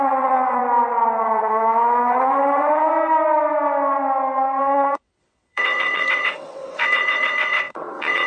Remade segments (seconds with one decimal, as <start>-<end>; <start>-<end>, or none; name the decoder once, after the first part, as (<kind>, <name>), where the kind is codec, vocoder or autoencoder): 0.0-0.6 (vocoder, WaveNeXt); 1.2-2.9; 4.6-8.3